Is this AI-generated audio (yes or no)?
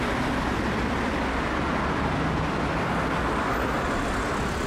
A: no